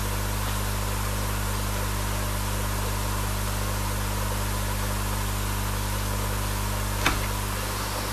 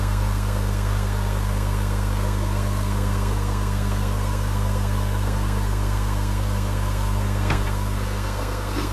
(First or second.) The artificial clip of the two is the second